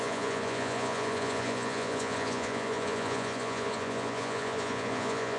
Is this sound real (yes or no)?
no